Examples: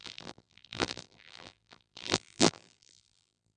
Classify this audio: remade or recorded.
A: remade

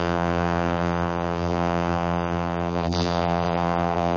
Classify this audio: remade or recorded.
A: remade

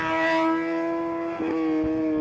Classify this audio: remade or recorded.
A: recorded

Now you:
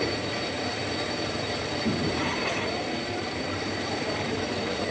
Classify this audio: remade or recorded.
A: remade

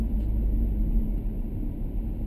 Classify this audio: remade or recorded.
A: remade